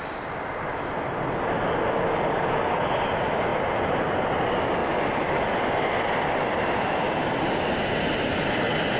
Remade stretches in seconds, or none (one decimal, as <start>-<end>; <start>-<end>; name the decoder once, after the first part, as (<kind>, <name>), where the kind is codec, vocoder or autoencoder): none

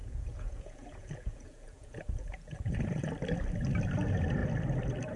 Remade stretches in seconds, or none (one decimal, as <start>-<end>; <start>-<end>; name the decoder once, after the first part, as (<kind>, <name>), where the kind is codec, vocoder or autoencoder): 0.0-3.1 (vocoder, Vocos)

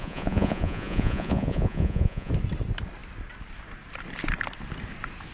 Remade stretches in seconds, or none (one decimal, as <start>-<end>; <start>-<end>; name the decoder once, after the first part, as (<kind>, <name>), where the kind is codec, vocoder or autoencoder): 0.0-2.3 (vocoder, Vocos)

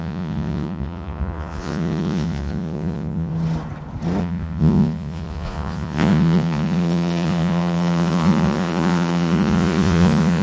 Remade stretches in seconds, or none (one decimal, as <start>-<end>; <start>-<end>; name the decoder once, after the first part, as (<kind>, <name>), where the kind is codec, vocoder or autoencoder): 0.0-3.3 (vocoder, Vocos); 4.2-10.4

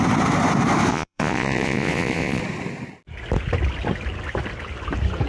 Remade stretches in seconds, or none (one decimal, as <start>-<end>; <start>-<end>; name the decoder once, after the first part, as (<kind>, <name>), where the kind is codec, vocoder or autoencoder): 0.9-2.4 (vocoder, Vocos)

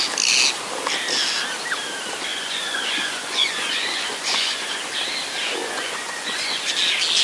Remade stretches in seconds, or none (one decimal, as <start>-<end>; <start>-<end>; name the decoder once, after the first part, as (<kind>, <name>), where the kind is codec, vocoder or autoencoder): 2.3-4.8 (vocoder, Vocos); 5.6-6.7

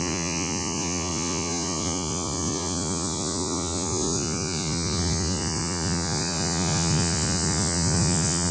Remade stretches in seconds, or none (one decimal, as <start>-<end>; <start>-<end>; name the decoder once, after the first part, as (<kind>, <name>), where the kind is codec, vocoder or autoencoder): 0.0-8.5 (vocoder, Vocos)